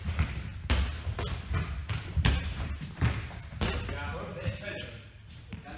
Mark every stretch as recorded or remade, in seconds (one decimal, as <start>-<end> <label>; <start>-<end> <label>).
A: 0.0-2.4 recorded; 2.4-2.9 remade; 2.9-5.8 recorded